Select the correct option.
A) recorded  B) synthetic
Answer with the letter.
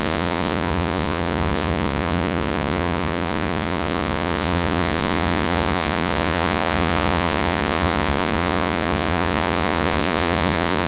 B